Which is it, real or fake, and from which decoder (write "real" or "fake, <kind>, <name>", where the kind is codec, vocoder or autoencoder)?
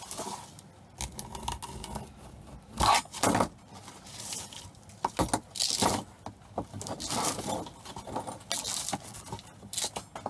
real